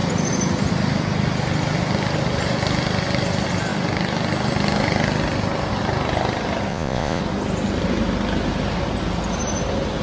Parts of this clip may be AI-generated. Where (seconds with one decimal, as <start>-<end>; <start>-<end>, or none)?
6.7-7.2